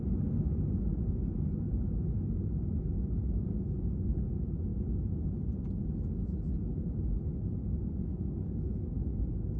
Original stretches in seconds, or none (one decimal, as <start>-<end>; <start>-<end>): 0.0-9.6